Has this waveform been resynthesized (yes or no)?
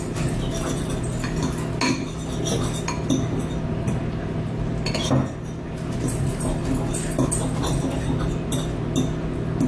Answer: no